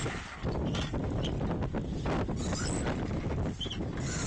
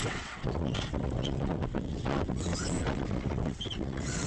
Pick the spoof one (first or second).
second